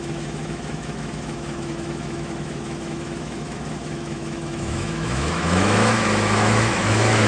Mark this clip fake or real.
fake